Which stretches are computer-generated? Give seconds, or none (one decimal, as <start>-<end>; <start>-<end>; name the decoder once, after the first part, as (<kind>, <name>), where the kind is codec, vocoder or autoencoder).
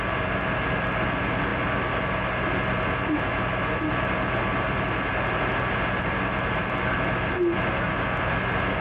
none